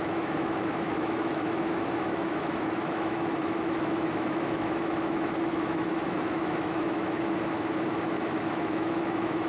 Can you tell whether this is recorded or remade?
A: remade